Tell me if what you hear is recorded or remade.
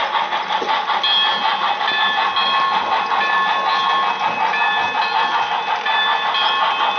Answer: recorded